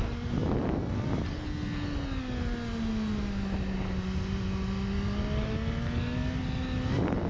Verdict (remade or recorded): recorded